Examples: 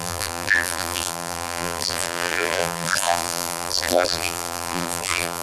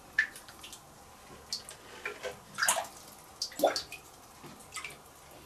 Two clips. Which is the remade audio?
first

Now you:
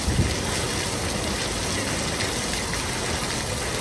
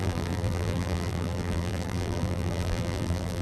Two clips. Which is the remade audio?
second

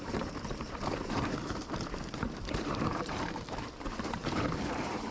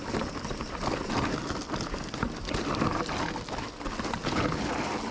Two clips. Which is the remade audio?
first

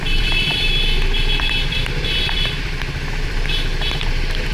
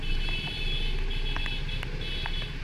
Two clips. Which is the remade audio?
first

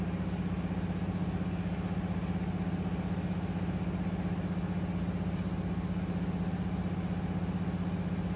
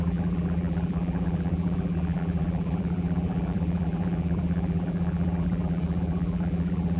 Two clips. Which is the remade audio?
second